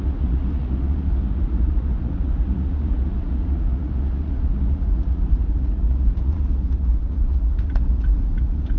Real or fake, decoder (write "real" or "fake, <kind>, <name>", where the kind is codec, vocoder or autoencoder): fake, vocoder, Vocos